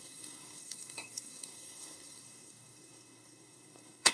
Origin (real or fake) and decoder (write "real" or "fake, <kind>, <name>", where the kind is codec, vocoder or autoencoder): fake, codec, SNAC